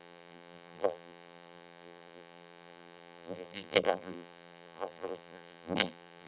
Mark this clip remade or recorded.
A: remade